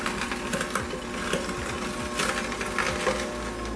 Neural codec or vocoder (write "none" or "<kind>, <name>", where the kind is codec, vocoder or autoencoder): none